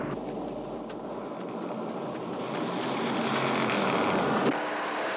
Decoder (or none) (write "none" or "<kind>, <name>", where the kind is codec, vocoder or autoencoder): none